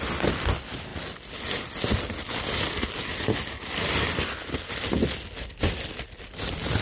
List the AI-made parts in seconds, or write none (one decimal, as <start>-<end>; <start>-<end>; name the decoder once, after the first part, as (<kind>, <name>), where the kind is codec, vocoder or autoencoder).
none

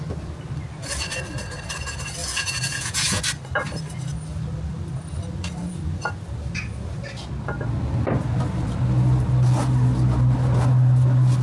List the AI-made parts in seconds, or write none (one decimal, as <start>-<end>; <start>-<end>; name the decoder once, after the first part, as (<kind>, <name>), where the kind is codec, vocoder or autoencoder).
2.2-3.2 (vocoder, Vocos)

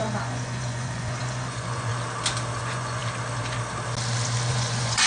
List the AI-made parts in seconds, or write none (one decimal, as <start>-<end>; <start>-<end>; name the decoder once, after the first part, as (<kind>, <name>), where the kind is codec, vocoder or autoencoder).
0.0-1.9 (vocoder, Vocos); 2.6-3.0; 4.5-5.1

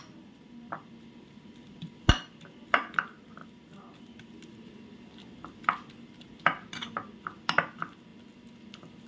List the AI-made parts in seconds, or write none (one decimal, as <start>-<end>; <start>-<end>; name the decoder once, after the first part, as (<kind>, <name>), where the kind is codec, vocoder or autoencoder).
none

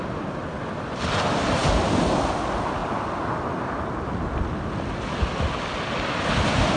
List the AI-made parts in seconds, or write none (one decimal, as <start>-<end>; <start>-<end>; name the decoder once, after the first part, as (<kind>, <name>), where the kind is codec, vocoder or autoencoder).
none

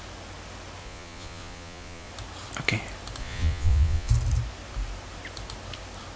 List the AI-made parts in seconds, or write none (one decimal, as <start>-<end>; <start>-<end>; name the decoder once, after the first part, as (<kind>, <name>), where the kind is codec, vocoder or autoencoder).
0.8-2.1 (vocoder, Vocos); 3.2-4.1

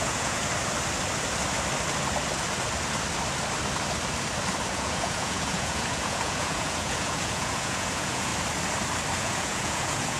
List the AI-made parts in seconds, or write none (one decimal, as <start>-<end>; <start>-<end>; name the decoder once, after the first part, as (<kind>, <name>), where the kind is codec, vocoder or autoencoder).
0.0-0.4 (vocoder, Vocos); 4.7-8.3; 9.2-10.2